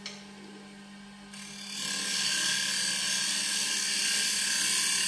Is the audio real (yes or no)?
yes